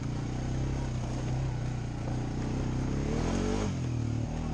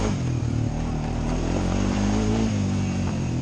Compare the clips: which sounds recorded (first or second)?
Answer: first